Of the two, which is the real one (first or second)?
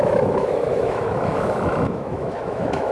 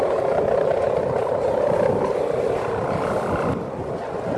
second